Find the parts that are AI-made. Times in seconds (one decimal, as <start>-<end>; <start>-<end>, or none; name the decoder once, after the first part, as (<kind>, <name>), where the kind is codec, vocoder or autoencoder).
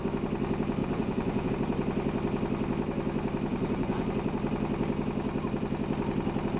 0.8-1.5 (vocoder, Vocos); 3.5-4.1